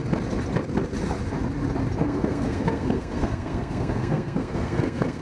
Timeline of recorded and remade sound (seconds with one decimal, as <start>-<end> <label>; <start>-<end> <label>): 0.0-2.0 recorded; 2.0-5.2 remade